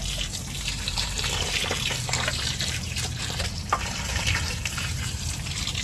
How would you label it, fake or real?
fake